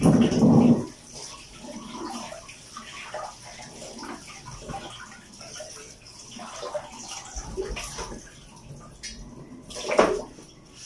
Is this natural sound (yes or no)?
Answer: yes